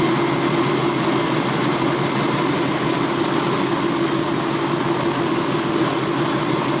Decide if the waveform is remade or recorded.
recorded